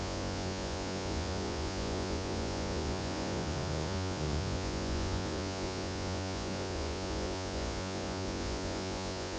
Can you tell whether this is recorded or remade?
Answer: remade